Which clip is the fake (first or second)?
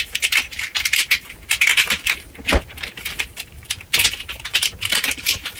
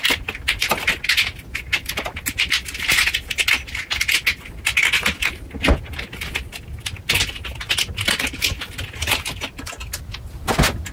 first